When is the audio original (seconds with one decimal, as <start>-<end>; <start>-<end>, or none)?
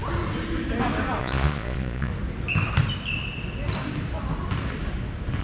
0.0-1.2; 2.1-5.4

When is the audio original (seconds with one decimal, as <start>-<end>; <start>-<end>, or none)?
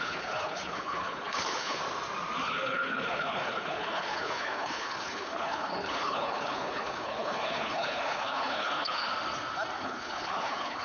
1.8-2.4; 9.1-9.8